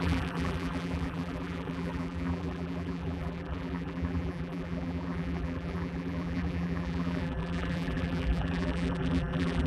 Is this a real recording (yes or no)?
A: no